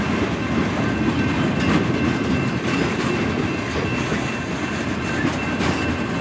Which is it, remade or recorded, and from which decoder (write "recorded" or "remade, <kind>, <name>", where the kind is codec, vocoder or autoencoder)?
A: recorded